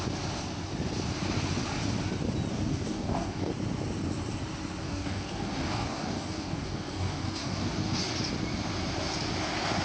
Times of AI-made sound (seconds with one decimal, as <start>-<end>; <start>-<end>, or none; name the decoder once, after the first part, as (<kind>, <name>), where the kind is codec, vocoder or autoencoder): 2.5-3.5 (codec, DAC); 4.8-8.0